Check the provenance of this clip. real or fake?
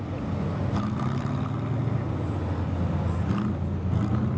real